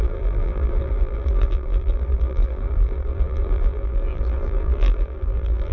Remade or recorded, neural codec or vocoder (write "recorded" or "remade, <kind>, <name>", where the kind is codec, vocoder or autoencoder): remade, vocoder, BigVGAN v2